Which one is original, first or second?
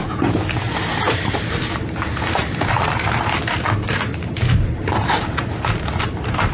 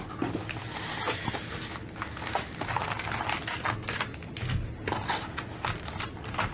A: second